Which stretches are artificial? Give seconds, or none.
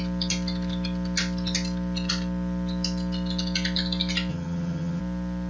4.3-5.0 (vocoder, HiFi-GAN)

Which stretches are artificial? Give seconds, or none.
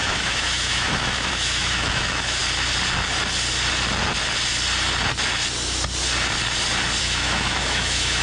0.0-2.4 (autoencoder, DAC-VAE); 7.0-8.2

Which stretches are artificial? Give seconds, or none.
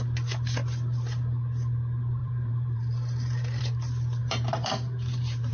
2.2-3.6 (vocoder, BigVGAN v2); 4.2-5.5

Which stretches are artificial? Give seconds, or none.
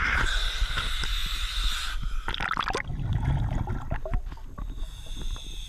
none